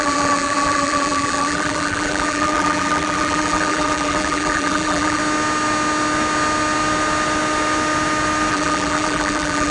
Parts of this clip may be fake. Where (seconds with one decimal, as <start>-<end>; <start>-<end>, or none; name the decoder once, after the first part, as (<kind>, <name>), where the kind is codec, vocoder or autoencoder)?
0.0-5.2 (vocoder, BigVGAN v2); 8.5-9.7